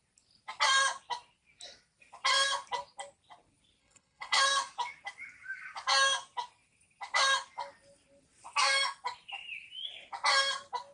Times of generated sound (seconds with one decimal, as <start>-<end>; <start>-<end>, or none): 3.8-4.4